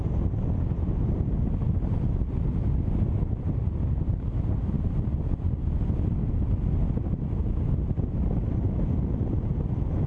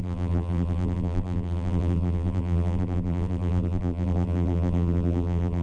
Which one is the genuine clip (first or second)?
first